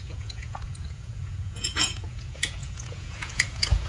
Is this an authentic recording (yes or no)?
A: no